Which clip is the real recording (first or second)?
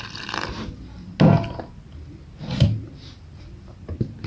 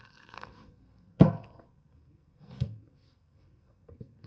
first